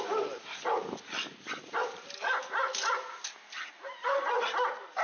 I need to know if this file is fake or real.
real